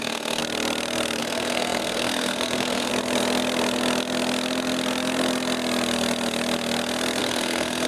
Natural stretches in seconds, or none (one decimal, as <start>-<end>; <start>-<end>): 0.4-1.2; 2.9-7.2